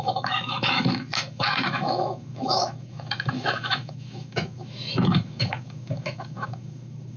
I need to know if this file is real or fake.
fake